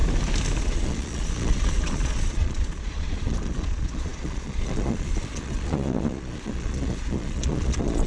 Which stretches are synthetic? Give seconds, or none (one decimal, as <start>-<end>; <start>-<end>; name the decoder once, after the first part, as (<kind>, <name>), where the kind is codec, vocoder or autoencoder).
0.6-8.1 (vocoder, Vocos)